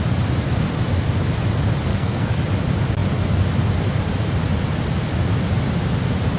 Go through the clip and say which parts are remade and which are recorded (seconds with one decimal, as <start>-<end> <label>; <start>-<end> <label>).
0.0-1.9 recorded; 1.9-2.4 remade; 2.4-6.4 recorded

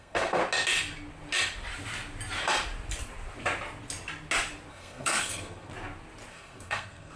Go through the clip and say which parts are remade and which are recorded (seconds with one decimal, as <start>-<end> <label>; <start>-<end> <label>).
0.0-0.4 remade; 0.4-4.7 recorded; 4.7-5.7 remade; 5.7-6.3 recorded; 6.3-7.2 remade

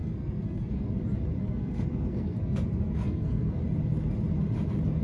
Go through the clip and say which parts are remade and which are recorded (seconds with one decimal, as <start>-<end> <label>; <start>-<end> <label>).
0.0-0.9 remade; 0.9-1.4 recorded; 1.4-3.6 remade; 3.6-5.0 recorded

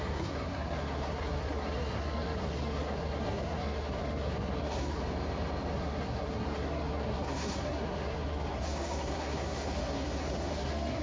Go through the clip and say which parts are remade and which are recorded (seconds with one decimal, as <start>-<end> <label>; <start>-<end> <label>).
0.0-5.0 remade; 5.0-5.7 recorded; 5.7-11.0 remade

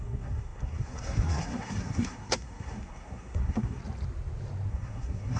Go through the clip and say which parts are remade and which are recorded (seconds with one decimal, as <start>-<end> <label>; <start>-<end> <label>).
0.0-3.8 remade; 3.8-4.7 recorded; 4.7-5.4 remade